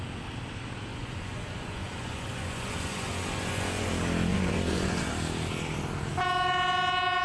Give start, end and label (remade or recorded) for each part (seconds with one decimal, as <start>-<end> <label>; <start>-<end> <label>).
0.0-0.9 recorded; 0.9-3.9 remade; 3.9-4.3 recorded; 4.3-5.1 remade; 5.1-7.2 recorded